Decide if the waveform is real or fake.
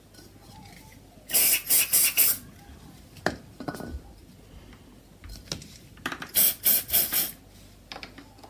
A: real